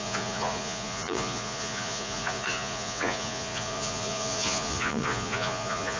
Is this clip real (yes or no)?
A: no